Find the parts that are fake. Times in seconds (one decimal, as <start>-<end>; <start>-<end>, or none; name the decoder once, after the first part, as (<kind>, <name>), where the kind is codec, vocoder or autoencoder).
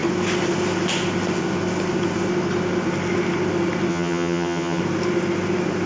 3.9-4.8 (vocoder, HiFi-GAN)